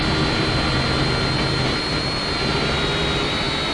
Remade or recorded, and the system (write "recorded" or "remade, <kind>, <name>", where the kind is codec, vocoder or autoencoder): recorded